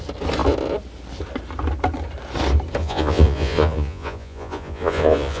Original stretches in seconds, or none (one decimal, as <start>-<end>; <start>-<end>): 0.0-2.8